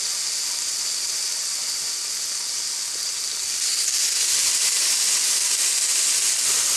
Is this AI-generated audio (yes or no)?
no